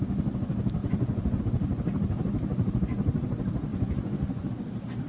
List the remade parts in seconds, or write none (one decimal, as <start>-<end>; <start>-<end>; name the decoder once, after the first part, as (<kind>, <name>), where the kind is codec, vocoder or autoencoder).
0.8-1.4 (vocoder, Vocos); 3.7-4.5